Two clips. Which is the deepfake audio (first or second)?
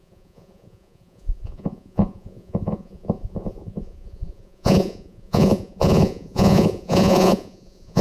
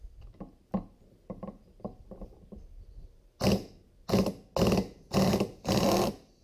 first